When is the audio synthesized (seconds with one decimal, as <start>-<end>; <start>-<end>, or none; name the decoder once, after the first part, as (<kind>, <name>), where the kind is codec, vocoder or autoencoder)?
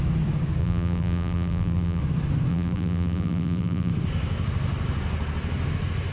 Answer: 0.6-2.0 (vocoder, BigVGAN v2); 2.5-3.9